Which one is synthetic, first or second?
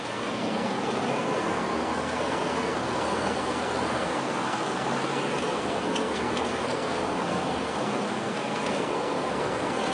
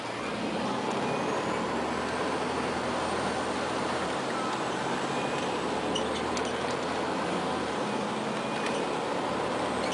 first